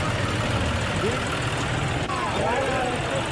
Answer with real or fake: real